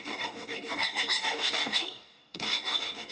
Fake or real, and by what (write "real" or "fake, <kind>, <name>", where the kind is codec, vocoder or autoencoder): fake, codec, DAC